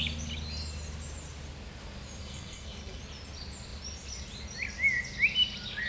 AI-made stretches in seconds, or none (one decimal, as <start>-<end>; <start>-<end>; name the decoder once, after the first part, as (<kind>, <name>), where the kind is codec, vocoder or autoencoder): 2.2-3.0 (codec, SNAC)

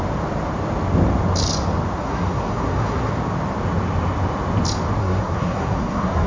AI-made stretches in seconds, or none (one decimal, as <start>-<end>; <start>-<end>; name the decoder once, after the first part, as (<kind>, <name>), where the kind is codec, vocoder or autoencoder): 2.0-3.1 (codec, SNAC); 5.0-6.3

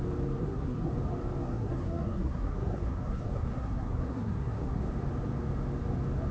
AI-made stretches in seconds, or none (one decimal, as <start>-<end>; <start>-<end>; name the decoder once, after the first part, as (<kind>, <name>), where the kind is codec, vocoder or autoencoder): 0.4-0.9 (codec, SNAC); 1.4-4.8

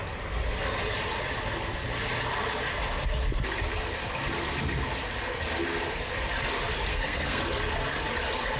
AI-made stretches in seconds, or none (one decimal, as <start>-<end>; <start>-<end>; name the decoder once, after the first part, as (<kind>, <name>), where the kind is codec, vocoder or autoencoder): 6.9-7.4 (codec, SNAC)